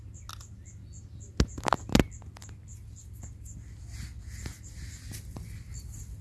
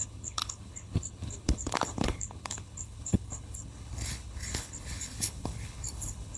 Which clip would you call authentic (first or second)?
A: first